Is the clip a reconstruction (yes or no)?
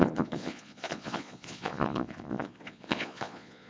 yes